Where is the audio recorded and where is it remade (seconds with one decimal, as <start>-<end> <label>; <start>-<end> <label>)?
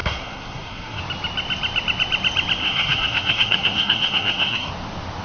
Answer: 0.0-1.0 remade; 1.0-2.6 recorded; 2.6-4.7 remade; 4.7-5.2 recorded